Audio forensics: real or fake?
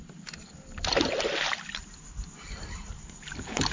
real